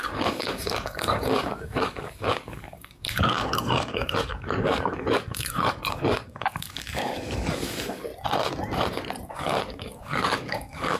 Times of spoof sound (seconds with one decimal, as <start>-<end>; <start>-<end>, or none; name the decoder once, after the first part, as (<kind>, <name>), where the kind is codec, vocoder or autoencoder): 0.0-8.1 (codec, DAC); 9.3-11.0